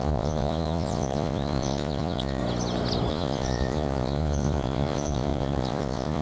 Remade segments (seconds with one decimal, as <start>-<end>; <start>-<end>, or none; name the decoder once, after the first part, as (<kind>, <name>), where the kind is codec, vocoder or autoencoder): 0.0-2.4 (vocoder, Vocos); 3.1-6.2